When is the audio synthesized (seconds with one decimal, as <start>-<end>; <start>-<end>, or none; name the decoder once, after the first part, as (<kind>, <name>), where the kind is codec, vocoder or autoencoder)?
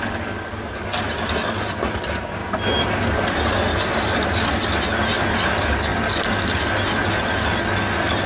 none